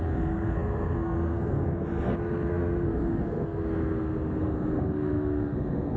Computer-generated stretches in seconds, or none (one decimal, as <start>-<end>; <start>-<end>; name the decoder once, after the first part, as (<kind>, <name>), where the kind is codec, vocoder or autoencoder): 0.0-6.0 (codec, SNAC)